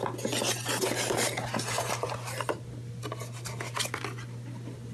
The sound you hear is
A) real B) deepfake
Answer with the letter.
A